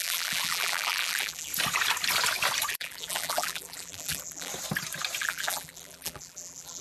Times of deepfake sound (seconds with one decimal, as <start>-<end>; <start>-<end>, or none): 0.0-1.5; 2.7-4.5; 5.2-6.8

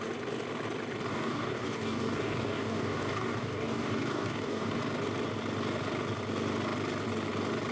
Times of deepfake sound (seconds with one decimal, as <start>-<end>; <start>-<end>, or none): 1.1-4.8

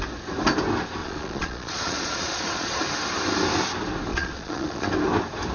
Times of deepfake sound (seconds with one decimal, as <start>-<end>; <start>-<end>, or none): 1.0-2.8; 4.1-4.9

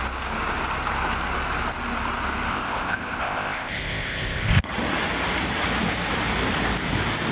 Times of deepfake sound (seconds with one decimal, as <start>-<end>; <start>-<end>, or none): 2.5-4.7

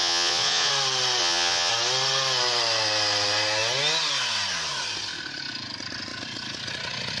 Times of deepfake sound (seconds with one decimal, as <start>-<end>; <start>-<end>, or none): 0.0-0.7; 1.2-1.7